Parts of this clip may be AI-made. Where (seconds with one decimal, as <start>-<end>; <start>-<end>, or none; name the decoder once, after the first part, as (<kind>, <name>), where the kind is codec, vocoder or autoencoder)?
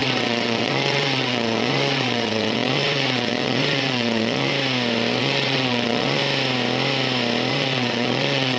0.0-4.5 (vocoder, WaveNeXt); 5.2-6.2; 7.5-8.6